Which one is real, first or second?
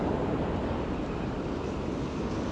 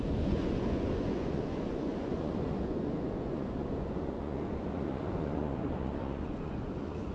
first